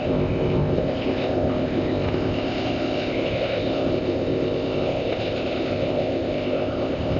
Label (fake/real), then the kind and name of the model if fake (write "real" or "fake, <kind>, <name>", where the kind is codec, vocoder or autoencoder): fake, codec, ZipCodec